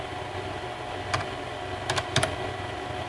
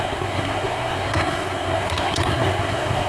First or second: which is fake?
second